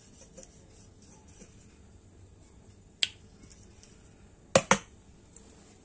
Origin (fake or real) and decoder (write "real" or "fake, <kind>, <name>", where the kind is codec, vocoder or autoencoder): real